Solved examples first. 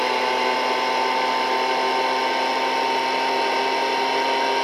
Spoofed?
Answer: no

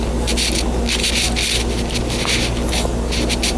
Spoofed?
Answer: no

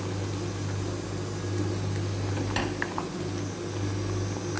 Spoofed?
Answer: no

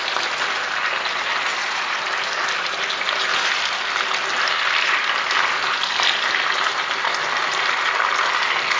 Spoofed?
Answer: no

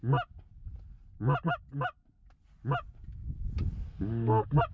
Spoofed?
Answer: no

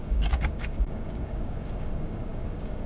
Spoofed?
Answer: yes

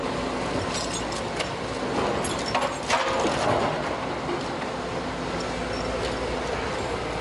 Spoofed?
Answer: no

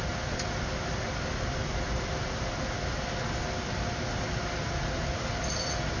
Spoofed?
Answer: no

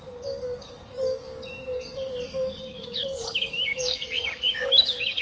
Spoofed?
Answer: yes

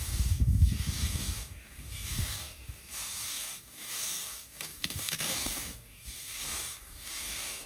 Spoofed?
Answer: yes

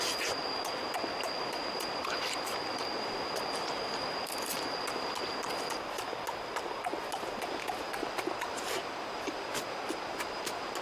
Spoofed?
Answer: no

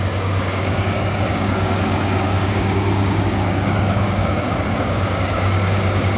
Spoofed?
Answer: yes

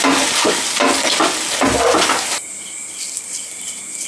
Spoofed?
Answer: no